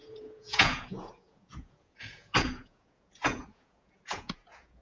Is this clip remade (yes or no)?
yes